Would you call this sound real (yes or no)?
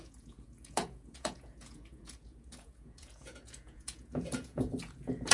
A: no